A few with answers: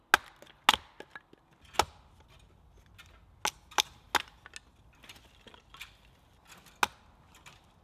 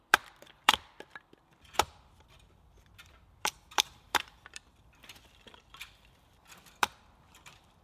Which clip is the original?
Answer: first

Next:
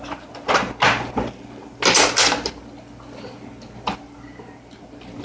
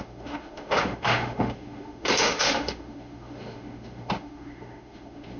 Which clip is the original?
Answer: first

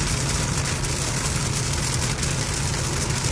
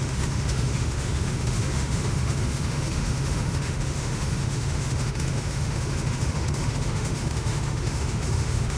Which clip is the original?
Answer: first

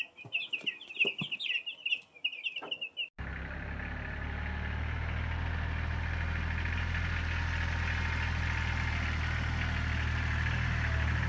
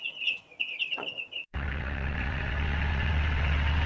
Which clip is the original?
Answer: first